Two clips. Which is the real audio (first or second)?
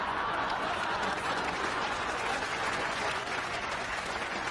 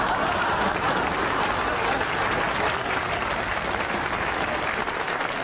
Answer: second